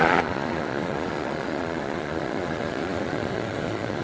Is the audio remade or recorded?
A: remade